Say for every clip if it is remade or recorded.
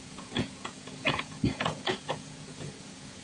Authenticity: remade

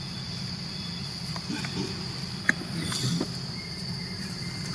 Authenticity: recorded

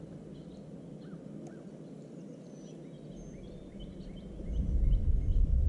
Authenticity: recorded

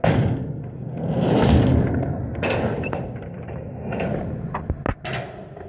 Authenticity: recorded